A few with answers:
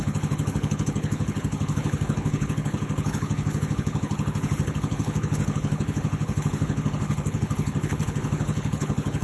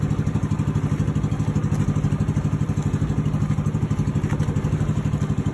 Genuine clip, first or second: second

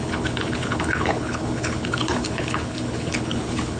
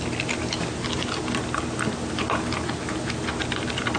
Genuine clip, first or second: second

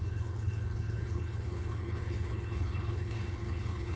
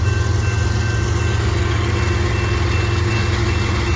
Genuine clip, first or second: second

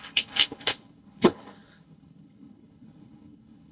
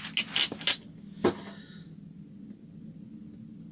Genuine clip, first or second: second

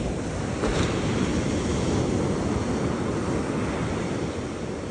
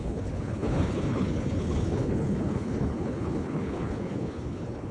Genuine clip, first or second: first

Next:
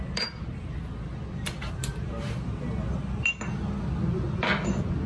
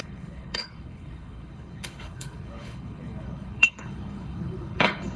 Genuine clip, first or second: first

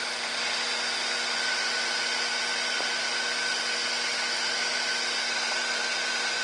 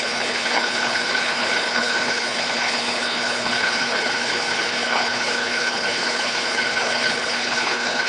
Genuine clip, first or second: first